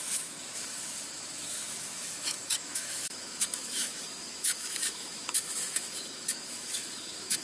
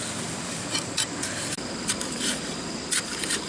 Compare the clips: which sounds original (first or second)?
second